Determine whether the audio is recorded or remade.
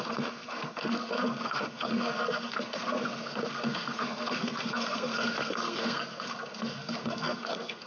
remade